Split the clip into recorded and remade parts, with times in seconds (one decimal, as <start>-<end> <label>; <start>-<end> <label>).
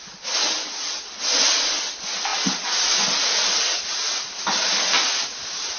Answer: 0.0-5.8 recorded